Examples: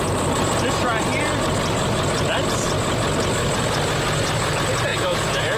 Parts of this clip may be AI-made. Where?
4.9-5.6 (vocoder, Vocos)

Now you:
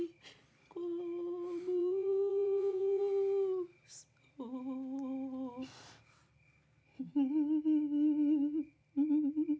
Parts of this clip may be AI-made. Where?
1.8-3.0 (vocoder, Vocos)

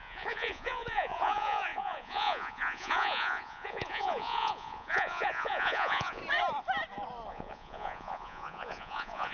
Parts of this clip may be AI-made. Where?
0.0-6.2 (vocoder, Vocos); 7.3-9.3

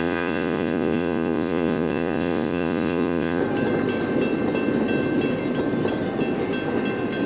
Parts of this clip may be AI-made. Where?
0.0-3.4 (vocoder, Vocos)